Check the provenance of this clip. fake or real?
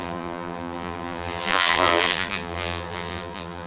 fake